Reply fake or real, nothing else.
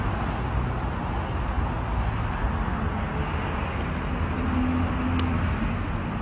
real